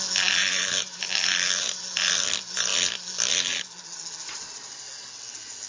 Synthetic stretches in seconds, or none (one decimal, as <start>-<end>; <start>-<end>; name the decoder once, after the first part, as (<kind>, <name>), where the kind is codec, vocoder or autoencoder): 0.4-1.8 (vocoder, BigVGAN v2)